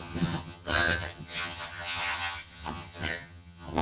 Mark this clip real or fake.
fake